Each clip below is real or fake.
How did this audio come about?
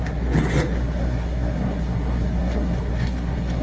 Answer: fake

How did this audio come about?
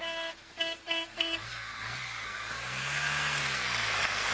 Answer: fake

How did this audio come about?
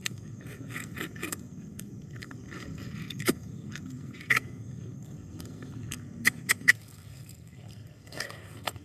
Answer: fake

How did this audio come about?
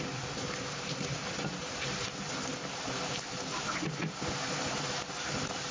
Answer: real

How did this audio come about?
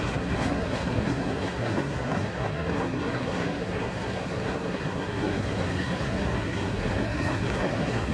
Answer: fake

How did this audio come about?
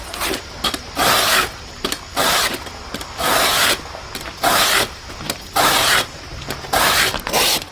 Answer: real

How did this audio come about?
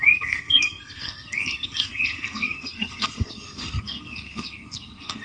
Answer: fake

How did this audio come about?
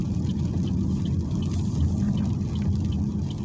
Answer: real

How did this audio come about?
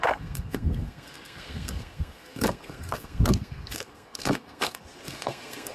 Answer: fake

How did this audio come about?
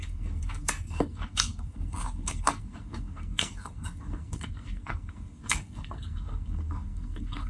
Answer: fake